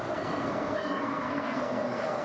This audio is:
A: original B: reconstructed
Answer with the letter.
B